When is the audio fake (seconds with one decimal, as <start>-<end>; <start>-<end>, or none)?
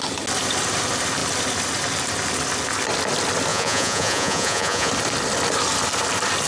3.5-4.9